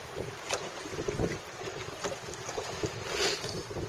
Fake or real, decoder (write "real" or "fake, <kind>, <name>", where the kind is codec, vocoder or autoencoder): real